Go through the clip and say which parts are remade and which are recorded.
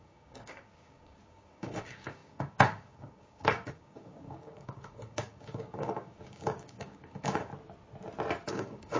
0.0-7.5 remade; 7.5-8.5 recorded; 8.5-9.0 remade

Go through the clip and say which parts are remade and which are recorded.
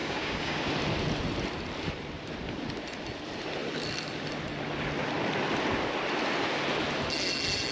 0.0-0.7 remade; 0.7-7.7 recorded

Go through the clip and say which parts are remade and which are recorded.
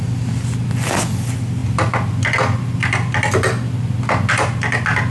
0.0-5.1 recorded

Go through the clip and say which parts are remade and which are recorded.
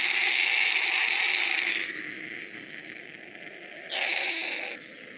0.0-1.3 recorded; 1.3-2.0 remade; 2.0-2.4 recorded; 2.4-3.0 remade; 3.0-5.2 recorded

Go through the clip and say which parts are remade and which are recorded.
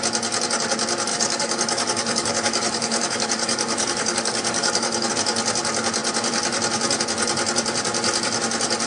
0.0-1.1 recorded; 1.1-5.1 remade; 5.1-8.9 recorded